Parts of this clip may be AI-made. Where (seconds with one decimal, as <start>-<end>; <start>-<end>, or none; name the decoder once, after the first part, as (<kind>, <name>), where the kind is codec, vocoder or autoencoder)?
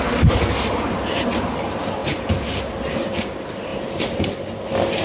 none